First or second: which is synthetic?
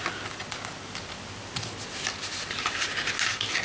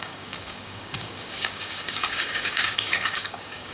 second